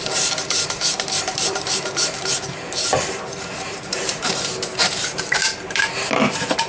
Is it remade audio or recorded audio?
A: remade